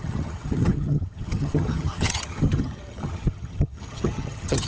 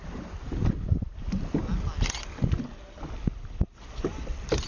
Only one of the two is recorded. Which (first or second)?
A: second